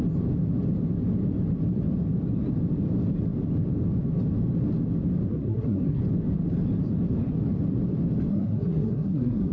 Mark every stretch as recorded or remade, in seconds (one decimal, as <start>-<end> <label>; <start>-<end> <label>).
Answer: 0.0-5.3 recorded; 5.3-6.0 remade; 6.0-8.3 recorded; 8.3-9.5 remade